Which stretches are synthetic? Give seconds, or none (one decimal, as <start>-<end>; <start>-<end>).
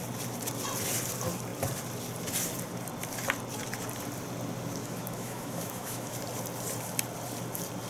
4.8-6.1